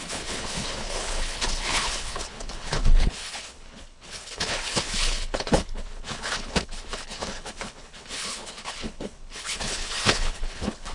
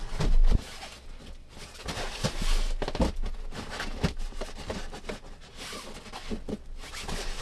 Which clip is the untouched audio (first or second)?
second